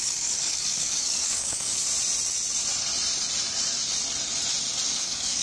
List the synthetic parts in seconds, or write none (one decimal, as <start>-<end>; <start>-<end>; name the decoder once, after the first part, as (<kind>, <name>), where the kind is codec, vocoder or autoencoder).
0.0-1.8 (codec, DAC); 4.9-5.4